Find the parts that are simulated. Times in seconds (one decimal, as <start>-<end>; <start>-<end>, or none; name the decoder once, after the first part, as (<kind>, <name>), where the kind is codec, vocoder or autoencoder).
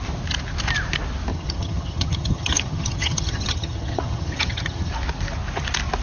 1.3-4.9 (vocoder, HiFi-GAN)